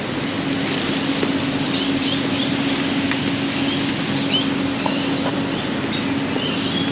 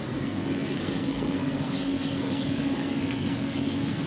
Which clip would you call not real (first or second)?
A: second